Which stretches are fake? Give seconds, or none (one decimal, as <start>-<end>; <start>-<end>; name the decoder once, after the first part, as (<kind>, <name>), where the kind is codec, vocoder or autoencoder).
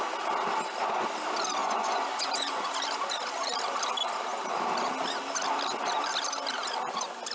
1.6-2.7 (vocoder, Vocos)